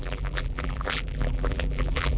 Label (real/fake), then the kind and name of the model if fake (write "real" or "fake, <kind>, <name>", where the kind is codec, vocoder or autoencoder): fake, vocoder, BigVGAN v2